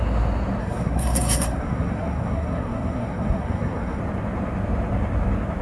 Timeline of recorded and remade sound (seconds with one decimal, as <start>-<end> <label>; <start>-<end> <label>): 0.0-0.6 recorded; 0.6-4.0 remade; 4.0-5.6 recorded